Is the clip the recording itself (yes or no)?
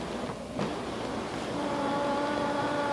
yes